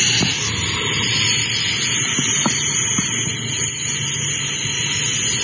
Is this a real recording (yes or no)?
yes